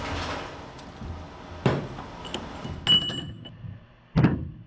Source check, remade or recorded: recorded